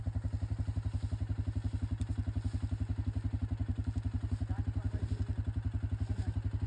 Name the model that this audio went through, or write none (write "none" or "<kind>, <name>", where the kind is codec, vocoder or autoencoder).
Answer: none